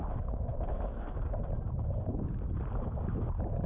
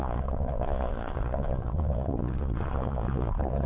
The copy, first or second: second